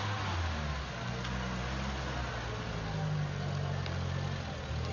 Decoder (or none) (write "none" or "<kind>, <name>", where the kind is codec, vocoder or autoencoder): none